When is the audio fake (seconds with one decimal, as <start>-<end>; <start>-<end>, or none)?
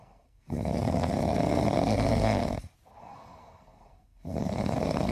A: 0.0-2.4; 3.0-5.1